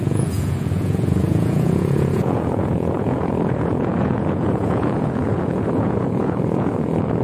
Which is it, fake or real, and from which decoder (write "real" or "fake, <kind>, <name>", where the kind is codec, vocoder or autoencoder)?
fake, vocoder, Vocos